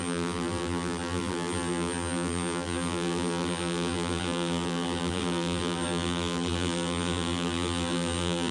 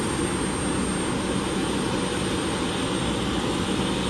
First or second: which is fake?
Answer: first